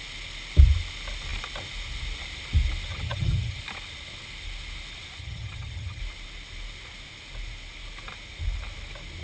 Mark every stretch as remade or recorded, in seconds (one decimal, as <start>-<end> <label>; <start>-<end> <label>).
0.0-2.9 recorded; 2.9-3.6 remade; 3.6-5.2 recorded; 5.2-6.0 remade; 6.0-9.2 recorded